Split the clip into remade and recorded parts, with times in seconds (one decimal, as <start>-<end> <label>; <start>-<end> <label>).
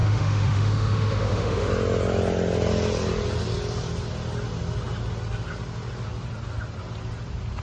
0.0-1.7 remade; 1.7-7.6 recorded